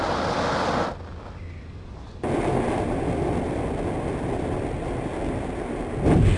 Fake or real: real